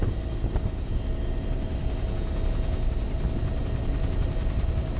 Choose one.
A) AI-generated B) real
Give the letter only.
B